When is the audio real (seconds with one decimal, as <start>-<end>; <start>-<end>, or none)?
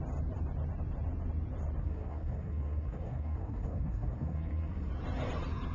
0.0-1.8; 4.9-5.7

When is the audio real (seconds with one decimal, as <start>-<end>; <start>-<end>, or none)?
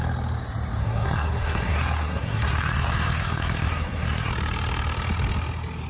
0.0-0.8; 4.3-5.9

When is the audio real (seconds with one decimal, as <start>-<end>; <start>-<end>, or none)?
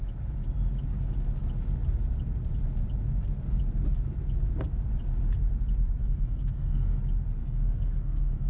0.0-6.0; 7.0-7.4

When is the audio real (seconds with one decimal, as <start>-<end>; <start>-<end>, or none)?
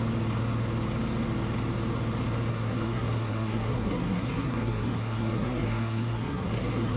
0.0-2.5